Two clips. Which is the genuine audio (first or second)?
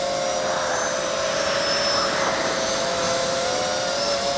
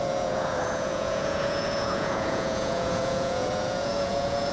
first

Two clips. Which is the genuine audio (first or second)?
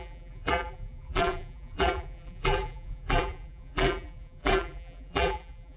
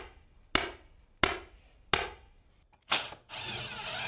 second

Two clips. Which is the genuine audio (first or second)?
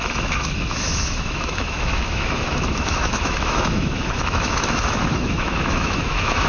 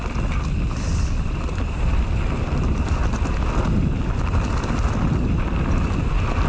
second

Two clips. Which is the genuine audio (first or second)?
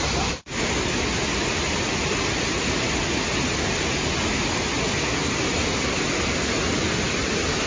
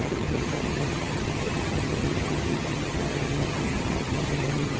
first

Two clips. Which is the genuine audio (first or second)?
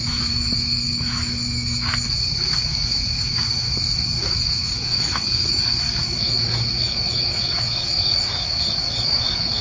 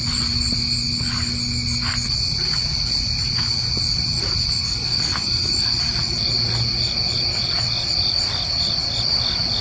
second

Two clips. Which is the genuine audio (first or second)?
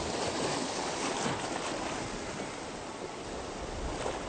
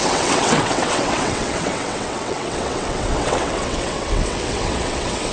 first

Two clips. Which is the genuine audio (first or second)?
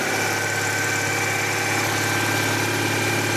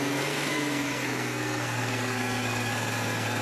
first